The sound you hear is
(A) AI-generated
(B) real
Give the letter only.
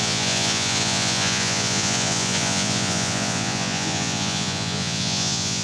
A